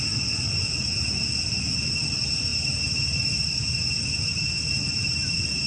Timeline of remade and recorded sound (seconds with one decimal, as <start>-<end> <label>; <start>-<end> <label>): 0.0-2.5 recorded; 2.5-5.7 remade